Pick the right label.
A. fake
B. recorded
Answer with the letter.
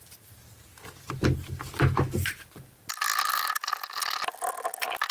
B